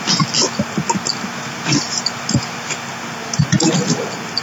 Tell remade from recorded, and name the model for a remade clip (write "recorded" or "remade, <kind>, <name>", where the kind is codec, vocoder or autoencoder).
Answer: recorded